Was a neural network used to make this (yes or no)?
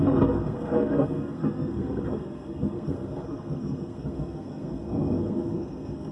yes